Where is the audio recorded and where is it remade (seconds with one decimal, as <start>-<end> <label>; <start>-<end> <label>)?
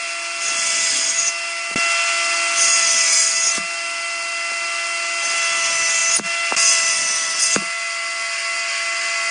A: 0.0-9.3 recorded